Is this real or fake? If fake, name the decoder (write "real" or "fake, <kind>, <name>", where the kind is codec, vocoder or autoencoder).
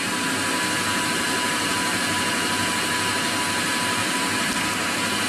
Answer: real